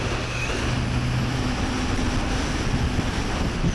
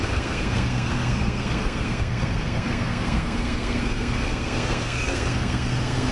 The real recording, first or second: first